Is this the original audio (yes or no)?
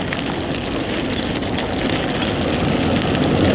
yes